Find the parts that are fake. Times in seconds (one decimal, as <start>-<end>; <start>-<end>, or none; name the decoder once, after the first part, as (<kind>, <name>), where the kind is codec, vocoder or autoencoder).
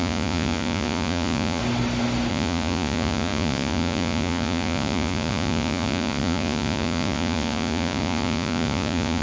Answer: 0.0-1.6 (vocoder, Vocos); 2.3-9.2